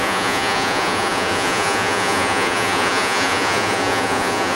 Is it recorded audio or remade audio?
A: remade